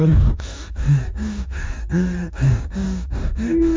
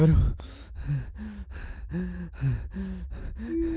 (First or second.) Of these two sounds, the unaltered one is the second